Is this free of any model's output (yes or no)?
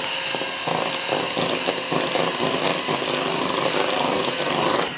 yes